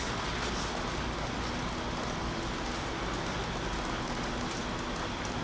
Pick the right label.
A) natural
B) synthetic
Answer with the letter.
A